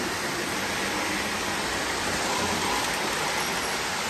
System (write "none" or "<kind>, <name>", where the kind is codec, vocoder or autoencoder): none